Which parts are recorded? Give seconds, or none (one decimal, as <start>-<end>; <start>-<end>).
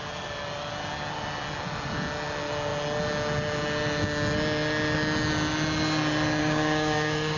0.0-6.4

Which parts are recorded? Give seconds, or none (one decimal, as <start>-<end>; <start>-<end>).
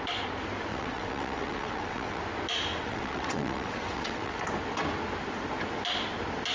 0.0-0.7; 2.2-2.7; 4.4-6.5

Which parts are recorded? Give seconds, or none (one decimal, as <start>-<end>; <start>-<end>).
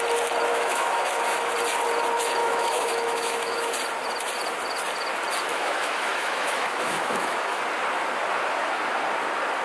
0.0-0.5; 1.5-2.4; 3.7-5.5; 7.6-9.6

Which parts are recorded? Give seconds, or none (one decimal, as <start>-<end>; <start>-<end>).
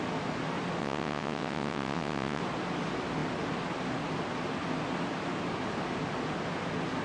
0.0-0.8; 2.4-7.0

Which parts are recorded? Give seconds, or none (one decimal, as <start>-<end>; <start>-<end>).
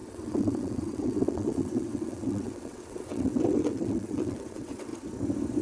4.9-5.6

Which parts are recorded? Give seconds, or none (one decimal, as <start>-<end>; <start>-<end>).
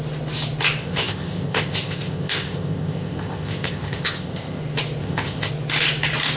0.0-0.8; 4.6-5.0; 5.5-6.4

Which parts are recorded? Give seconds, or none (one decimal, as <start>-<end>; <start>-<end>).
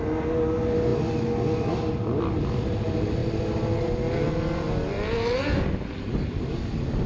0.0-7.1